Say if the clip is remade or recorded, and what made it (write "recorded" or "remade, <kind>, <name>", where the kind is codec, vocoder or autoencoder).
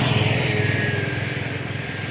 recorded